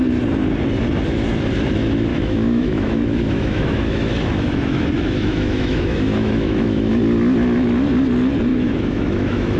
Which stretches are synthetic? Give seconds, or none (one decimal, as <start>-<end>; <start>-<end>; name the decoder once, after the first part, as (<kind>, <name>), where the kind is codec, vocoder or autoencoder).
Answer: 2.1-6.9 (autoencoder, DAC-VAE); 8.5-9.6